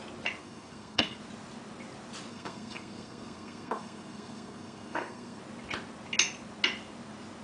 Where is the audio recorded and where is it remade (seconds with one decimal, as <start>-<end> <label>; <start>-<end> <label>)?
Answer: 0.0-0.4 recorded; 0.4-1.2 remade; 1.2-2.3 recorded; 2.3-5.4 remade; 5.4-7.4 recorded